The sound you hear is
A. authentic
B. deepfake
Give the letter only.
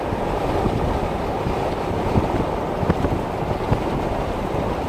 A